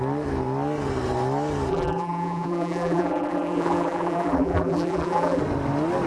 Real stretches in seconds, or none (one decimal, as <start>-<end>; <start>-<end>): 0.0-1.7; 5.4-6.1